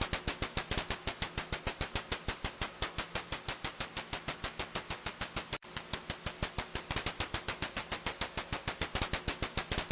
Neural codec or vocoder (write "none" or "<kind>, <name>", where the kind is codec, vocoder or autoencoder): none